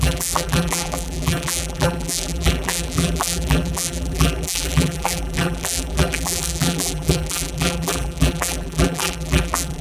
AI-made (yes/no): yes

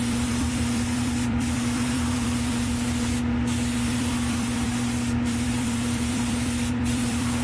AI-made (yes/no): yes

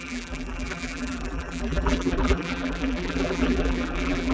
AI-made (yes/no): yes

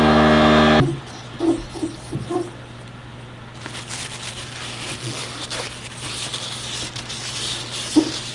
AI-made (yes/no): no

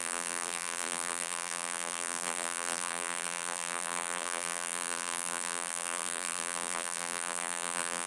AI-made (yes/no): yes